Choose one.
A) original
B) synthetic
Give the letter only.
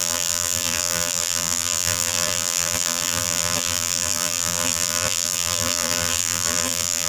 B